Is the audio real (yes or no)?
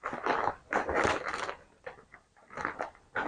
yes